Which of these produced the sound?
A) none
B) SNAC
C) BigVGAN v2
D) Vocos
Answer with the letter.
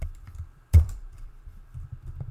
C